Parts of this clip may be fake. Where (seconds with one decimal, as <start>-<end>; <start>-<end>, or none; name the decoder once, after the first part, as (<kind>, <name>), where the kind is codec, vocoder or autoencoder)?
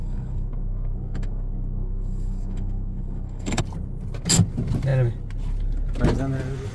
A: 0.0-3.6 (codec, SNAC)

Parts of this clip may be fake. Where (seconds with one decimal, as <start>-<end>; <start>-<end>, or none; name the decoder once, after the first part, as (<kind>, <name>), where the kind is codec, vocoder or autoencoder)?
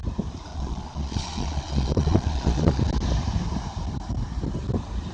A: 0.5-2.8 (vocoder, Vocos)